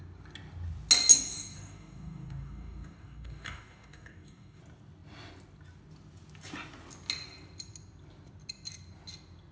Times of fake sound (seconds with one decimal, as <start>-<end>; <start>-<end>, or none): 1.1-4.6